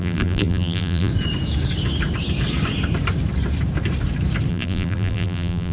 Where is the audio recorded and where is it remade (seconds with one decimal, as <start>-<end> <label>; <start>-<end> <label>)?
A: 0.0-1.1 remade; 1.1-4.5 recorded; 4.5-5.7 remade